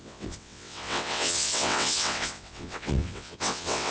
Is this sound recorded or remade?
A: remade